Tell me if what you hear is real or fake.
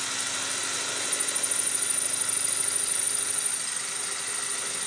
real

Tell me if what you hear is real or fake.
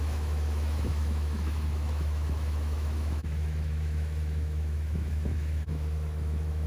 fake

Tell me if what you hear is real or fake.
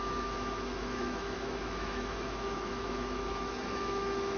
fake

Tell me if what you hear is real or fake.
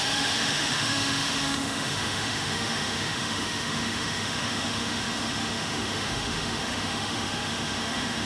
fake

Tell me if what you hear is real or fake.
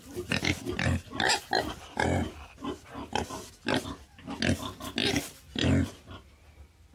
real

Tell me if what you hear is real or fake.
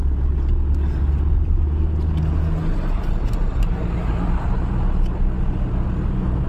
real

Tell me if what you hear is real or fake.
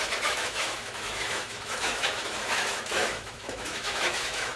fake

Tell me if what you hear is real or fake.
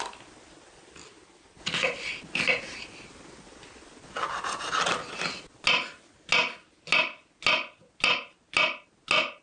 real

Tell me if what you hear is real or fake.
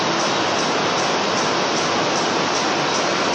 real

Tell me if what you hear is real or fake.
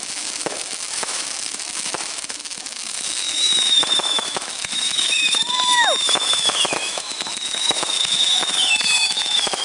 fake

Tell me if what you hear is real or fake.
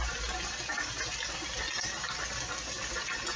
real